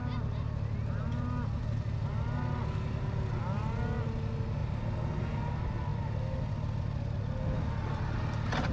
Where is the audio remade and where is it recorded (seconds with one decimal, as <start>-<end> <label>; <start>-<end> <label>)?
0.0-8.7 recorded